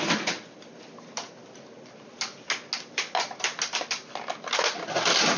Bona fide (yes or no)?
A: yes